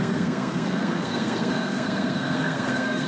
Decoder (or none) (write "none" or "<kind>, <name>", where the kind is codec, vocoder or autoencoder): codec, SNAC